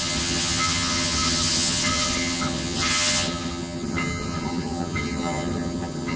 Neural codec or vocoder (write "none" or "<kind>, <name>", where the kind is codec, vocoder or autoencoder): vocoder, HiFi-GAN